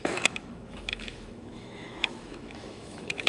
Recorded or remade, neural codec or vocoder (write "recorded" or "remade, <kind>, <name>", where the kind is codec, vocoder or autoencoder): remade, autoencoder, DAC-VAE